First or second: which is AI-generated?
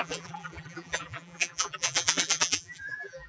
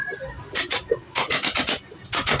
first